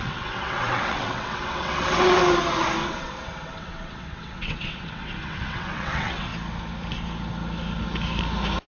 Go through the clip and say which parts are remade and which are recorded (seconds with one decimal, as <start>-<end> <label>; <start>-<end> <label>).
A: 0.0-2.2 remade; 2.2-2.9 recorded; 2.9-6.3 remade; 6.3-8.7 recorded

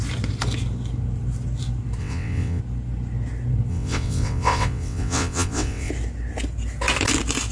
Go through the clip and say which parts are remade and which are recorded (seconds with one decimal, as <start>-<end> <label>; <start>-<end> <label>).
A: 0.0-2.0 recorded; 2.0-2.6 remade; 2.6-3.7 recorded; 3.7-5.9 remade; 5.9-7.5 recorded

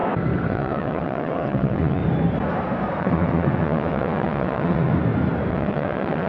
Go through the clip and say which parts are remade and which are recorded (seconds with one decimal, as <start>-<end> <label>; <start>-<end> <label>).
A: 0.0-0.5 recorded; 0.5-2.0 remade; 2.0-3.0 recorded; 3.0-4.9 remade; 4.9-5.5 recorded; 5.5-6.3 remade

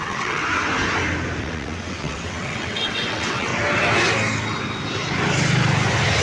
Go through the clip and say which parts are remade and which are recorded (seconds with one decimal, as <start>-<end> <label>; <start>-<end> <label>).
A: 0.0-0.4 remade; 0.4-1.4 recorded; 1.4-3.5 remade; 3.5-6.2 recorded

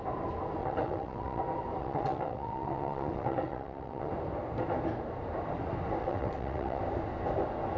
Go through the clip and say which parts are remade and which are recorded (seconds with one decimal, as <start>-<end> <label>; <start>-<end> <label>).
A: 0.0-0.6 recorded; 0.6-1.4 remade; 1.4-1.8 recorded; 1.8-4.1 remade; 4.1-6.0 recorded; 6.0-6.8 remade; 6.8-7.8 recorded

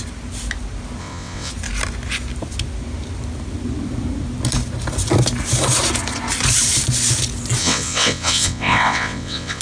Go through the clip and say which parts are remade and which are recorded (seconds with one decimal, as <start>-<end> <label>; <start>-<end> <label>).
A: 0.0-1.0 recorded; 1.0-1.5 remade; 1.5-7.6 recorded; 7.6-9.6 remade

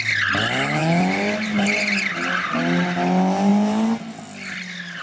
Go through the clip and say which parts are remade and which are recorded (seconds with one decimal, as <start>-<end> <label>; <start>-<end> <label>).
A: 0.0-5.0 recorded

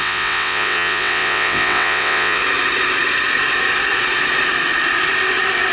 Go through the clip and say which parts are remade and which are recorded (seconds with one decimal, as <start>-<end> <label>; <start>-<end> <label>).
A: 0.0-2.4 remade; 2.4-5.7 recorded